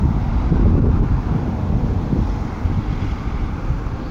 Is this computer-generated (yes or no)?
no